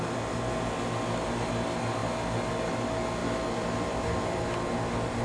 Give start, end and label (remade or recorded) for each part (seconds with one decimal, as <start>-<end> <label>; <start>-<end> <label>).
0.0-3.2 recorded; 3.2-4.5 remade; 4.5-5.2 recorded